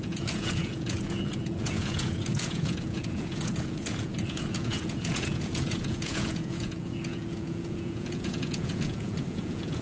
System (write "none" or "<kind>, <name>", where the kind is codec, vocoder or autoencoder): vocoder, Vocos